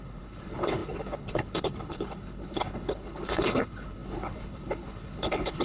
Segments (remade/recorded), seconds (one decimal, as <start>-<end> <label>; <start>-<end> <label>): 0.0-5.6 remade